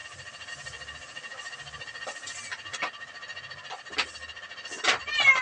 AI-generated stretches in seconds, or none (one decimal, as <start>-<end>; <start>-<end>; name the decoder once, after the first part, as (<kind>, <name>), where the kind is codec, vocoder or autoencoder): 0.0-0.5 (vocoder, BigVGAN v2); 1.2-1.8